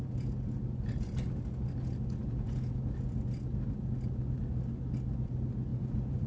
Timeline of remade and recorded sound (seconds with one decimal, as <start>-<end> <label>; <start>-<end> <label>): 0.0-2.2 recorded; 2.2-2.8 remade; 2.8-5.7 recorded; 5.7-6.3 remade